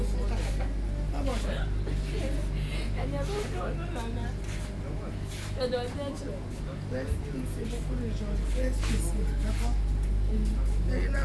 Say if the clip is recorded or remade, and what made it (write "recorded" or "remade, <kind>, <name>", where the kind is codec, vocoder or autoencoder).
recorded